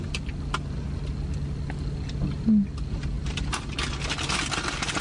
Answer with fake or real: real